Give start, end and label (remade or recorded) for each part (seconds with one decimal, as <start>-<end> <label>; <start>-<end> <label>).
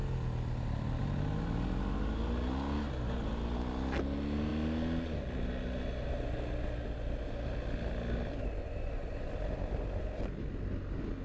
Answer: 0.0-8.6 recorded; 8.6-9.3 remade; 9.3-11.2 recorded